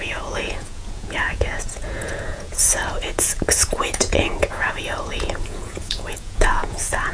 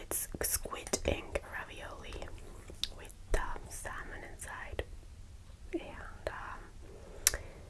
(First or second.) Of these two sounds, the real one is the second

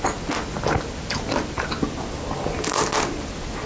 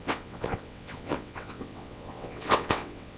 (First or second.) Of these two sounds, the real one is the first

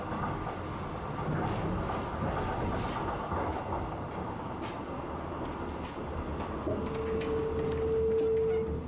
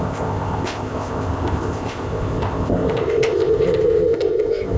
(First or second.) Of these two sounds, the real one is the first